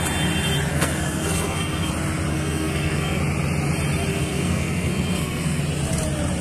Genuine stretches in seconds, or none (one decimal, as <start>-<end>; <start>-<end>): 0.0-0.7; 1.9-2.3; 3.2-4.1; 5.6-6.4